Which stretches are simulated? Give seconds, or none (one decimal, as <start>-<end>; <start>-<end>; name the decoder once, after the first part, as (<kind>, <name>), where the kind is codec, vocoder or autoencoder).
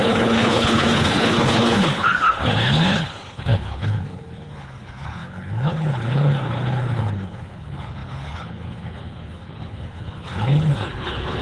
0.0-11.4 (codec, HILCodec)